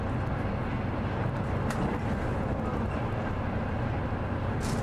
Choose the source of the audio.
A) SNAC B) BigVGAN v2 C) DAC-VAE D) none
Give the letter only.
D